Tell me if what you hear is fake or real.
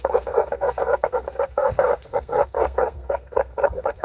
fake